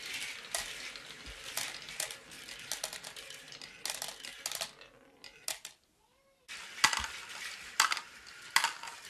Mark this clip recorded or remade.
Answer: recorded